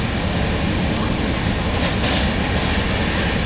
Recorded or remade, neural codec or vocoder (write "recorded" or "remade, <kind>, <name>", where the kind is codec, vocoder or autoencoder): recorded